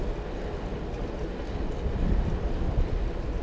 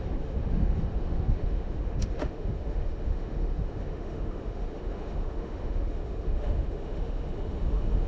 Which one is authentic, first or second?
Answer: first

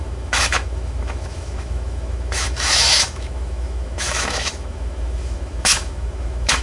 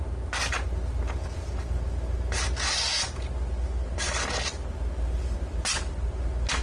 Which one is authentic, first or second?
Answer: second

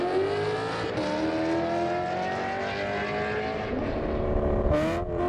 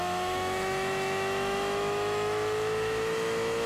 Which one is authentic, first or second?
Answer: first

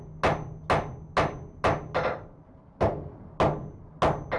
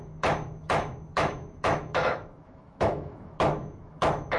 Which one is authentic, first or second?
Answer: first